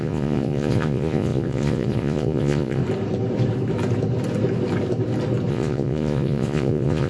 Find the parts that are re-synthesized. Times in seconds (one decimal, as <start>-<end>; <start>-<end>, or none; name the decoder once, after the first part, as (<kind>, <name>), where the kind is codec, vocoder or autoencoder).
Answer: 0.0-2.8 (vocoder, Vocos); 5.5-7.1